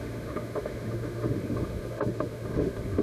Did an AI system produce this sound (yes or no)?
yes